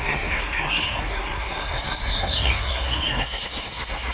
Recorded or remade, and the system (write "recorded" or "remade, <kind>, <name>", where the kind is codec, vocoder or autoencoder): remade, codec, SNAC